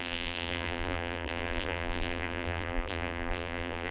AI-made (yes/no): yes